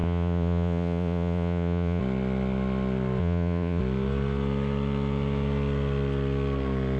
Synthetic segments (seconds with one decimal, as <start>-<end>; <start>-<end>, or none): 0.0-2.0; 3.2-3.8